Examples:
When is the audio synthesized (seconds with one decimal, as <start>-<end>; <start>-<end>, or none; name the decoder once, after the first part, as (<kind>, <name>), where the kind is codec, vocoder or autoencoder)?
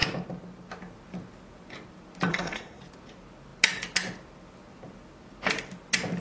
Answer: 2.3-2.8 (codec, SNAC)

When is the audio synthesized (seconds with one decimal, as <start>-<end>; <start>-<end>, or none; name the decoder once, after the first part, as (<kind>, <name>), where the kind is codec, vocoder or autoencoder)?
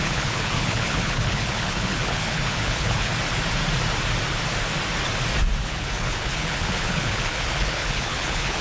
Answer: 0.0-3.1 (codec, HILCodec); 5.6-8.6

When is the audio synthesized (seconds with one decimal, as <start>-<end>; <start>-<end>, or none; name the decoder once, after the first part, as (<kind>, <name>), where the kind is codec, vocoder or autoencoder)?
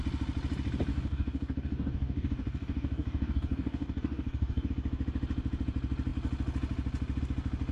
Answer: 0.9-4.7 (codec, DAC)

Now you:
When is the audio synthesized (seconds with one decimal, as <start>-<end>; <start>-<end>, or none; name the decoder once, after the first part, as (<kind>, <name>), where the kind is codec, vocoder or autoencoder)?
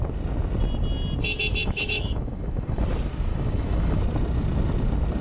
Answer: 1.6-2.8 (autoencoder, DAC-VAE); 3.3-4.0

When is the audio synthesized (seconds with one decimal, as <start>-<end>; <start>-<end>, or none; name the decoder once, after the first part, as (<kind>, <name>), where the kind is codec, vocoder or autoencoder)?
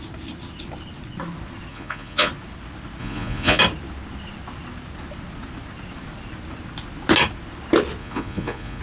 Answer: 1.7-2.3 (vocoder, Vocos); 3.0-3.6; 8.0-8.8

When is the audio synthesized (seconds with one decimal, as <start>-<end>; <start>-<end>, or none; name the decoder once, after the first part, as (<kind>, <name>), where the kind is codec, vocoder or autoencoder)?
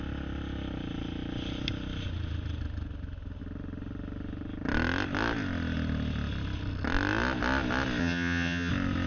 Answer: 8.0-8.7 (vocoder, HiFi-GAN)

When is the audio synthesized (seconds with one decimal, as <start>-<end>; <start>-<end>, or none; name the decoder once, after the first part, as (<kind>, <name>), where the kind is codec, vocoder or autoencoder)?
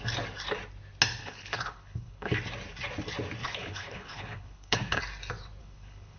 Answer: 1.2-2.3 (codec, HILCodec); 3.4-5.0; 5.6-6.2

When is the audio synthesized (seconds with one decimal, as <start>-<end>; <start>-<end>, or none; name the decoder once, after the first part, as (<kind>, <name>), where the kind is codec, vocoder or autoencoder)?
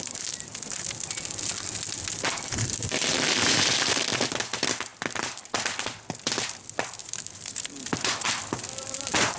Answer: 0.0-0.5 (vocoder, BigVGAN v2); 2.1-4.9; 6.6-9.4